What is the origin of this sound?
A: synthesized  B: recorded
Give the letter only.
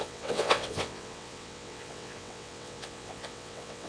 A